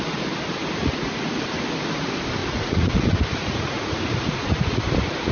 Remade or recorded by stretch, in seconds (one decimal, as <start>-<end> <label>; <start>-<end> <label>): 0.0-0.8 recorded; 0.8-1.4 remade; 1.4-2.4 recorded; 2.4-4.8 remade; 4.8-5.3 recorded